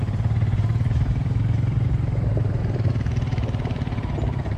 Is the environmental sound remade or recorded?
remade